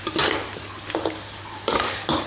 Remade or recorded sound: recorded